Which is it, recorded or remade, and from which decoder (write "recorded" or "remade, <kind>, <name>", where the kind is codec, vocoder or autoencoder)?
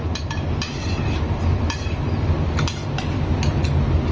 recorded